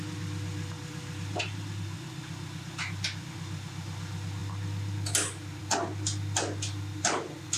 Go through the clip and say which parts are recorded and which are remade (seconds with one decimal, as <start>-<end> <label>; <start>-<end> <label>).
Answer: 0.0-7.6 recorded